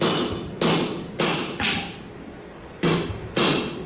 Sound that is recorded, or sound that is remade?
recorded